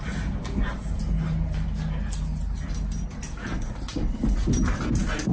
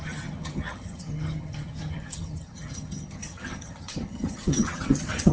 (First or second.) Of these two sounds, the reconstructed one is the second